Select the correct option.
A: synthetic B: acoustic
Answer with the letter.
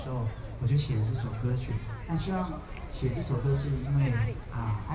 B